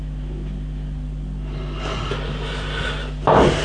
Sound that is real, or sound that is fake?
real